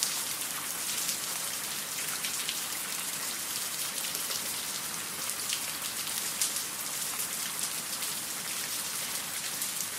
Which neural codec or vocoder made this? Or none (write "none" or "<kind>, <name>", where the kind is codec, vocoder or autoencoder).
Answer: none